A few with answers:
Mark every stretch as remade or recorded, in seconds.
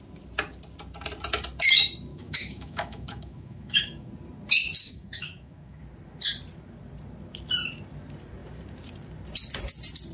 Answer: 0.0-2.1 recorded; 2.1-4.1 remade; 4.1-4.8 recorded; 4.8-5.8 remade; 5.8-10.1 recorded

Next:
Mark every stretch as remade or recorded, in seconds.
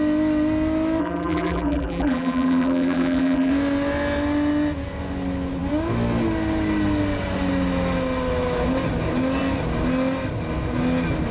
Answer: 0.0-1.0 recorded; 1.0-3.5 remade; 3.5-11.3 recorded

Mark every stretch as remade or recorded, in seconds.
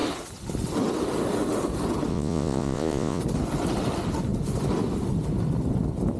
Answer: 0.0-2.1 recorded; 2.1-3.2 remade; 3.2-6.2 recorded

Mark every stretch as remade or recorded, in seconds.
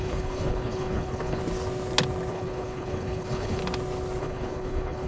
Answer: 0.0-1.4 remade; 1.4-2.3 recorded; 2.3-3.6 remade; 3.6-4.2 recorded; 4.2-5.1 remade